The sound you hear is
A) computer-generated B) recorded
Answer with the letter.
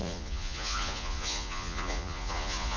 A